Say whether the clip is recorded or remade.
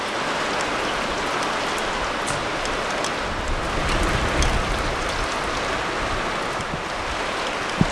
recorded